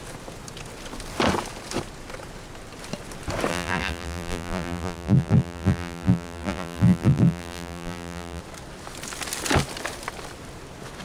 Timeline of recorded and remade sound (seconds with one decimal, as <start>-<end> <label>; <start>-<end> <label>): 0.0-3.5 recorded; 3.5-8.4 remade; 8.4-11.0 recorded